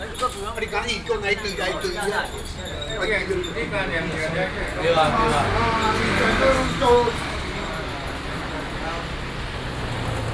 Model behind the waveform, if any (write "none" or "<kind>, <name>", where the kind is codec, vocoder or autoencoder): none